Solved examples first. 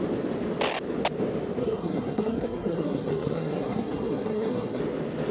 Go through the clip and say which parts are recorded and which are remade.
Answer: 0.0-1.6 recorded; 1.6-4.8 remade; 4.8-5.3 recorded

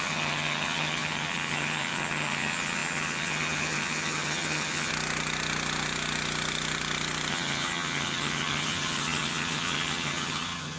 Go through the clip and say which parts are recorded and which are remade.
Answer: 0.0-4.9 remade; 4.9-7.3 recorded; 7.3-10.8 remade

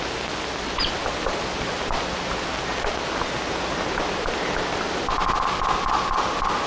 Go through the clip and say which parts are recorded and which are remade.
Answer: 0.0-6.7 recorded

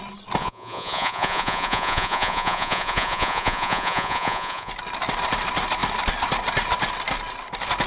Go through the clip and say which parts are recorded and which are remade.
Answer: 0.0-0.4 recorded; 0.4-4.7 remade; 4.7-7.9 recorded

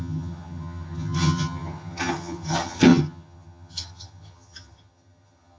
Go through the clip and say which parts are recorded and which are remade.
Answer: 0.0-5.6 remade

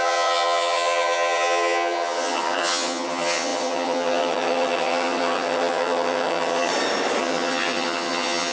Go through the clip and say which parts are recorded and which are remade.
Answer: 0.0-6.7 remade; 6.7-7.2 recorded; 7.2-8.5 remade

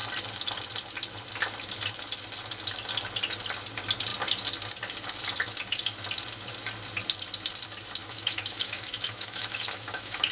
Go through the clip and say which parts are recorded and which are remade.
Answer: 0.0-8.0 recorded; 8.0-10.3 remade